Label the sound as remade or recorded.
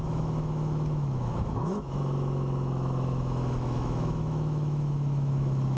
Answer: remade